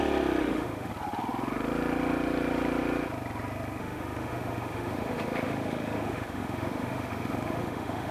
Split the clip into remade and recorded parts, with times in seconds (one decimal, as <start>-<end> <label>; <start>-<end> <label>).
0.0-0.4 recorded; 0.4-0.9 remade; 0.9-3.8 recorded; 3.8-8.1 remade